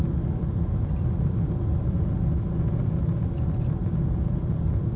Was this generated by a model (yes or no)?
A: no